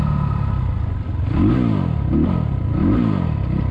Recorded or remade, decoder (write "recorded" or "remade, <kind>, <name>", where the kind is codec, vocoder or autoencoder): recorded